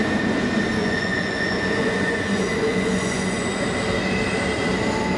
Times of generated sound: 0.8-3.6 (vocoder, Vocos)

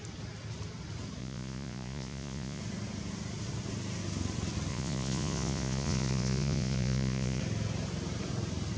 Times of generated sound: 1.2-2.6 (vocoder, Vocos); 4.7-7.4

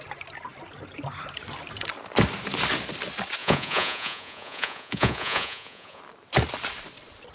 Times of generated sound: 3.4-6.0 (vocoder, Vocos)

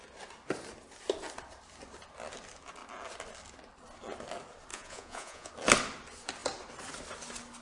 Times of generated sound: 4.7-5.5 (vocoder, Vocos)

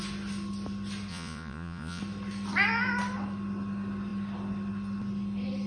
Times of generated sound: 1.1-2.0 (vocoder, Vocos)

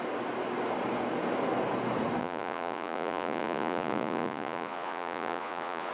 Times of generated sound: 2.2-5.9 (vocoder, Vocos)

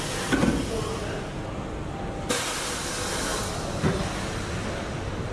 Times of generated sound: none